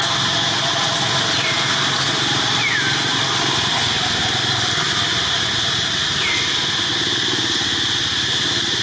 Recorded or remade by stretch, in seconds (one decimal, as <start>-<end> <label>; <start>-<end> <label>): 0.0-1.7 recorded; 1.7-2.7 remade; 2.7-4.2 recorded; 4.2-6.2 remade; 6.2-8.8 recorded